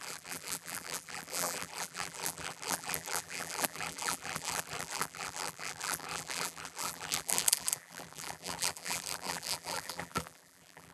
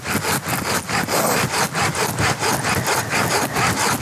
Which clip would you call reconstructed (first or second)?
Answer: first